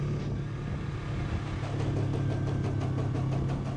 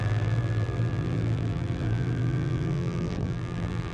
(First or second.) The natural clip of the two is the first